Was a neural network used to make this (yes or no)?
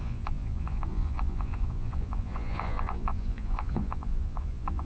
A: yes